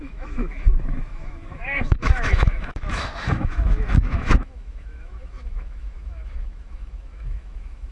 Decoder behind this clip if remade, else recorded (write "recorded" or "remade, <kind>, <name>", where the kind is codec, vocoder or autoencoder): remade, autoencoder, DAC-VAE